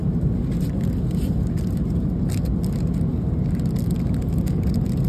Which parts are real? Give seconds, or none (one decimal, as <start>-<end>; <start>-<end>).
0.0-5.1